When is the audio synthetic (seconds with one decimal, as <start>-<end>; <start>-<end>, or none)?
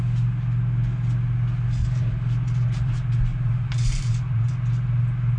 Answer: 1.8-2.9; 3.3-4.5